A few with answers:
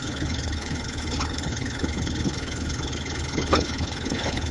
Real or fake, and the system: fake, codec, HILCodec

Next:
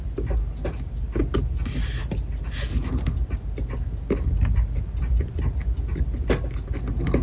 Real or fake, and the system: real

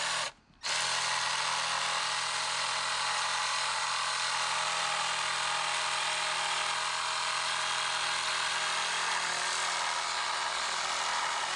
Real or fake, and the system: real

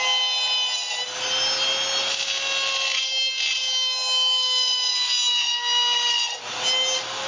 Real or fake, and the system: real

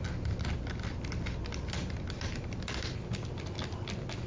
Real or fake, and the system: real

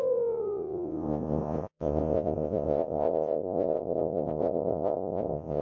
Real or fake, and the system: fake, vocoder, Vocos